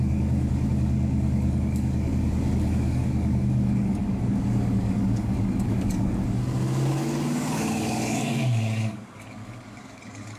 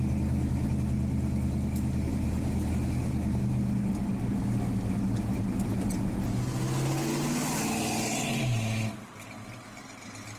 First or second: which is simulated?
first